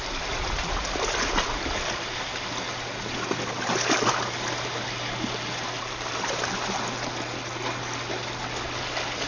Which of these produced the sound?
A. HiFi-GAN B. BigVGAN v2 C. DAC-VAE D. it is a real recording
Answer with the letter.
D